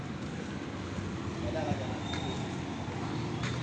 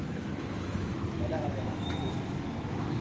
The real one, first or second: first